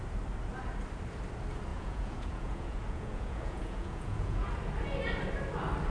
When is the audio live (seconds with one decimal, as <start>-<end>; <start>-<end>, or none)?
0.0-1.7; 4.5-5.9